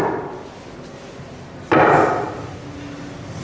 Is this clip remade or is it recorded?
recorded